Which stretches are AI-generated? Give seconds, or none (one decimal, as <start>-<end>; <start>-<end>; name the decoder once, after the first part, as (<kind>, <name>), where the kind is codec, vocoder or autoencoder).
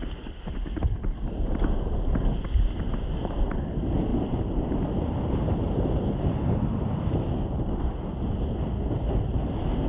none